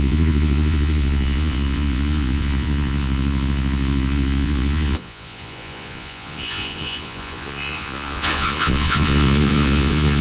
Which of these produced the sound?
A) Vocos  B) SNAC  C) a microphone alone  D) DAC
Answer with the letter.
A